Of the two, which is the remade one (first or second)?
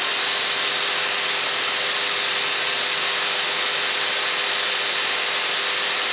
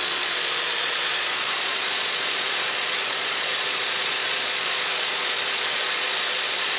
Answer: second